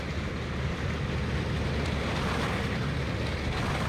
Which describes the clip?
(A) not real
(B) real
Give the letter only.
B